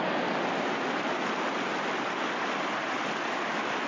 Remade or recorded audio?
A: recorded